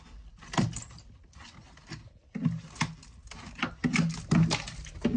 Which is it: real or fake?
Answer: real